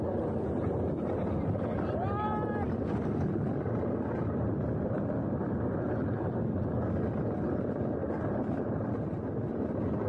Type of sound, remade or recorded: recorded